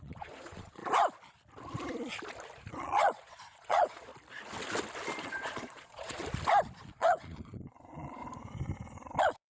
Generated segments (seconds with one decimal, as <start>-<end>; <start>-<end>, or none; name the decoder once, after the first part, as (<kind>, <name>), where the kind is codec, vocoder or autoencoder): 0.0-0.8 (vocoder, Vocos); 2.8-4.1; 5.2-6.2; 6.8-8.2; 9.2-9.6